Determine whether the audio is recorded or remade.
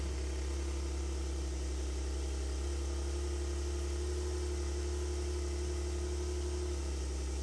recorded